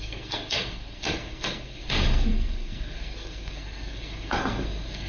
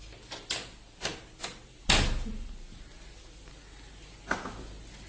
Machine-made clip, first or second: first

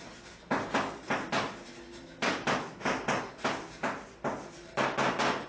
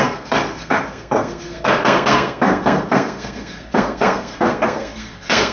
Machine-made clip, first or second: second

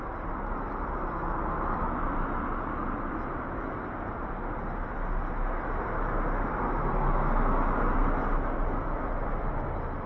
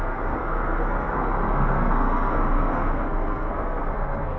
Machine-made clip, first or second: second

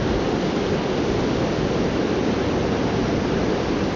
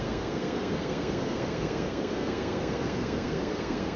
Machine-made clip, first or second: second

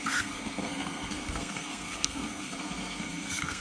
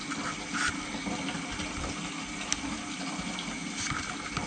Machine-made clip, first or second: first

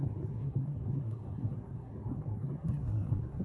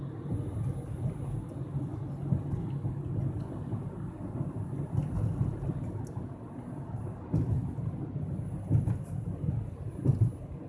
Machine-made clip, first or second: first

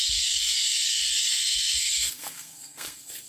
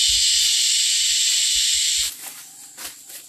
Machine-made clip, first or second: first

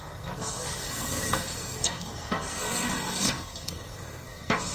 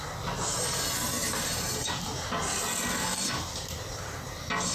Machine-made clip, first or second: first